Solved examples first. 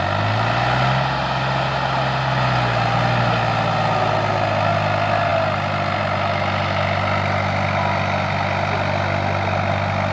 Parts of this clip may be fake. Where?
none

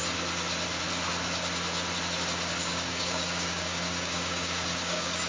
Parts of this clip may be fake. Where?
2.6-5.3 (codec, DAC)

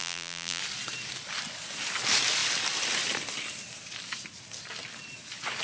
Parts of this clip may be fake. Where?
0.0-0.6 (vocoder, BigVGAN v2)

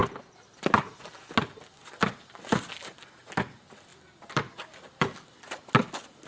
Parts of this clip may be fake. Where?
0.0-1.1 (vocoder, BigVGAN v2); 3.9-5.5

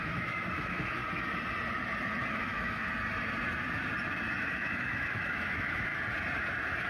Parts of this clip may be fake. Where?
0.0-1.0 (autoencoder, DAC-VAE); 2.3-2.8; 4.5-5.9

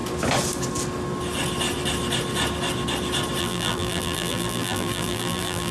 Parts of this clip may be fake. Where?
3.4-5.7 (vocoder, BigVGAN v2)

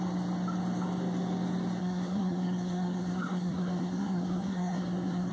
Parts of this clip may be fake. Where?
1.8-5.3 (codec, SNAC)